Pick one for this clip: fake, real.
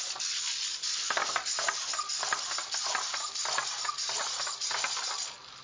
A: real